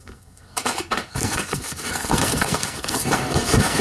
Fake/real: fake